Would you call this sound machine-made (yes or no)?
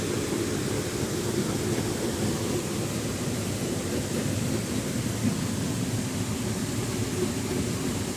no